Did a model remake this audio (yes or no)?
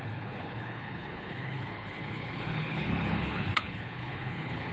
yes